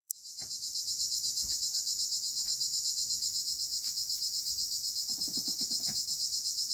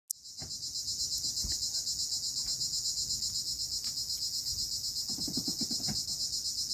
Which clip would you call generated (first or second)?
first